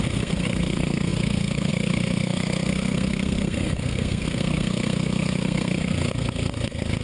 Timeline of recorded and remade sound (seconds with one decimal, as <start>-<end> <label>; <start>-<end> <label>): 0.0-7.0 remade